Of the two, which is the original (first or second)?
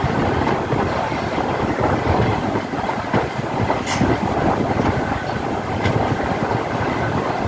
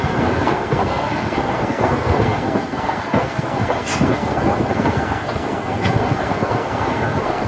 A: first